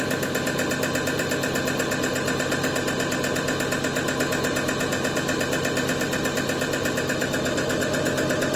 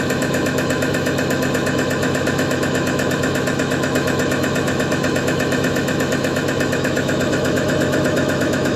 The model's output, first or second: second